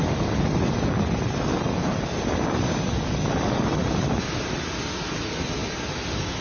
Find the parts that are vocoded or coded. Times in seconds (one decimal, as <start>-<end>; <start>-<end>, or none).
none